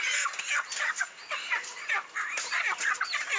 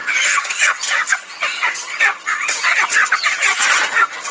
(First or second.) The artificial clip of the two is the second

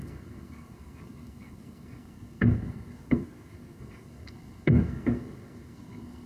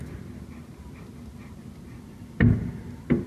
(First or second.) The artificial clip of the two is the first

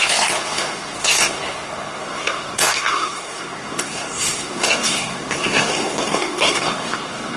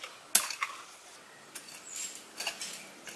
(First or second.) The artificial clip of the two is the first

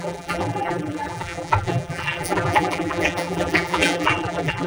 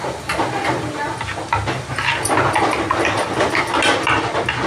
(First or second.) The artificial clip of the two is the first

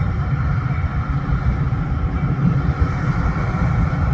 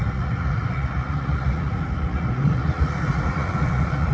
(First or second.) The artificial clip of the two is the second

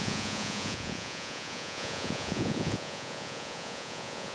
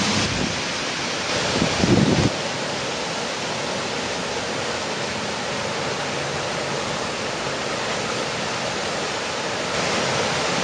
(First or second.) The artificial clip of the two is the first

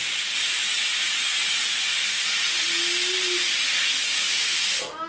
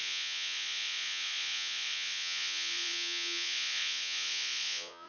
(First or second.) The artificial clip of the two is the second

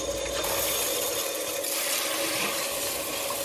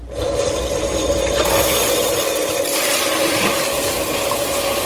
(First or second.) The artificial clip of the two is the second